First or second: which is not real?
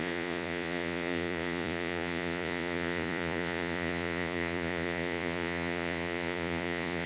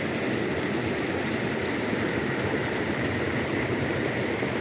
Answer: first